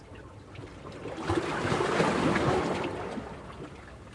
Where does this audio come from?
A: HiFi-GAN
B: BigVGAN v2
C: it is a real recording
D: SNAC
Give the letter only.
B